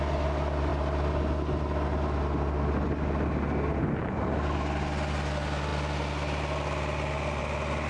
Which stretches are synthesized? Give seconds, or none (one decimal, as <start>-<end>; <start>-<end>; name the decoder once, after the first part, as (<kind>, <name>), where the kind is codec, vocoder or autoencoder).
none